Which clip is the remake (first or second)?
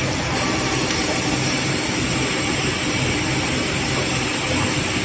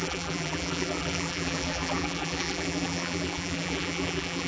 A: second